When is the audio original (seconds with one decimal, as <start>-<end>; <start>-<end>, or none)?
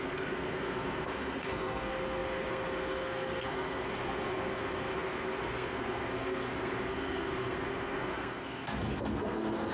none